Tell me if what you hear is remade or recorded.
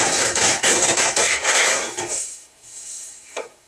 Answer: remade